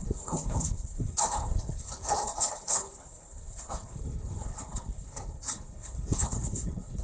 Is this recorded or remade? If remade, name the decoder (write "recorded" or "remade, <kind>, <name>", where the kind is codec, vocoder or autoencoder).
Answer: remade, codec, HILCodec